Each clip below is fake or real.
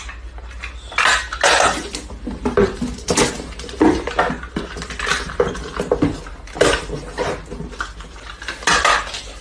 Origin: real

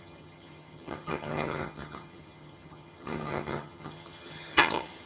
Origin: fake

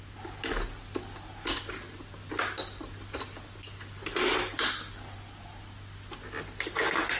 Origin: real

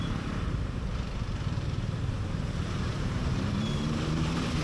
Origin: fake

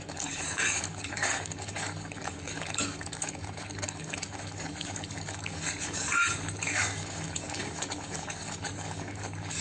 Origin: fake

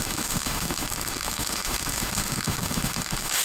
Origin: fake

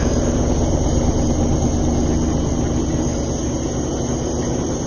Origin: real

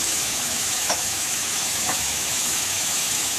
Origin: fake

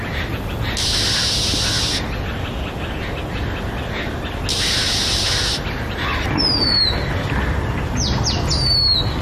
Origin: real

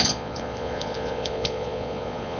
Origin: fake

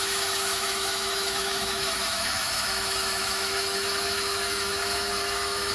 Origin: fake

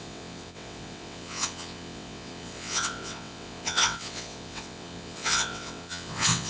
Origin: fake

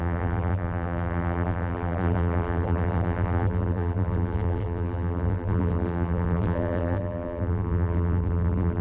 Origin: fake